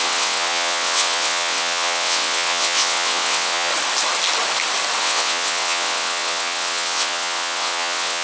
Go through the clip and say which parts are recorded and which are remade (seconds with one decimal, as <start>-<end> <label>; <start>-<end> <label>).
0.0-3.7 remade; 3.7-5.0 recorded; 5.0-8.2 remade